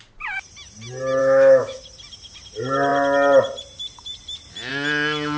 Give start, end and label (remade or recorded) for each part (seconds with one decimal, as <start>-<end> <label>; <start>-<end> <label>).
0.0-1.2 recorded; 1.2-1.8 remade; 1.8-5.4 recorded